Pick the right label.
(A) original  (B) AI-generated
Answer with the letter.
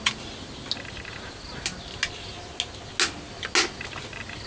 A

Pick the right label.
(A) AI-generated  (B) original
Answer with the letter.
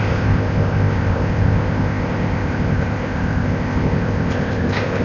A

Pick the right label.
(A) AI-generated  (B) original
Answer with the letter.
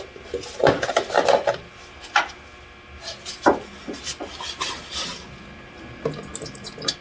B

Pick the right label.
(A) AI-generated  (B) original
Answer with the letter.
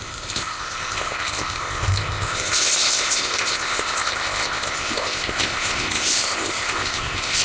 A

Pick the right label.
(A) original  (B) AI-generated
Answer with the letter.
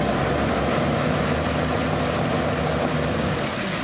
A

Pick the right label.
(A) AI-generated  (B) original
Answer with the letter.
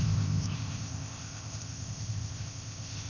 A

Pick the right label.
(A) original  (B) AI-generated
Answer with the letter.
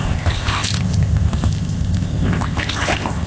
B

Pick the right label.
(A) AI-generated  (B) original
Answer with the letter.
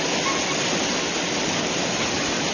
B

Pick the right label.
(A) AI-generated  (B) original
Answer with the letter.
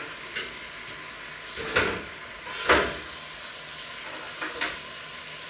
B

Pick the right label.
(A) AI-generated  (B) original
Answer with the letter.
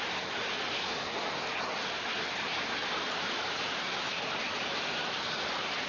B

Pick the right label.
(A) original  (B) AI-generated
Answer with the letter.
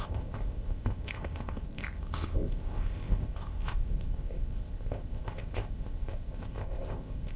B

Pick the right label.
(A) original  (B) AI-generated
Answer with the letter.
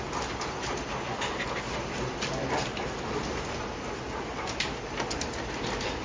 A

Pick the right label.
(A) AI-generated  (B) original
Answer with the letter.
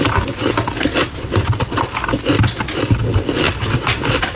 B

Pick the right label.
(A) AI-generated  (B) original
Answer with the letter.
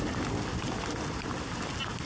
B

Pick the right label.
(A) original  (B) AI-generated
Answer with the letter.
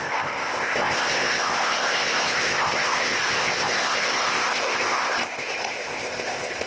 B